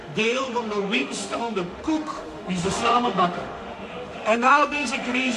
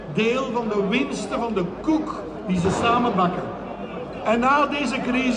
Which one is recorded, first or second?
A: second